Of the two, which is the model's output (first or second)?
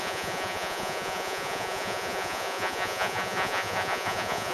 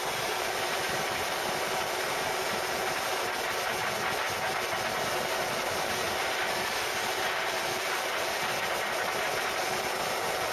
first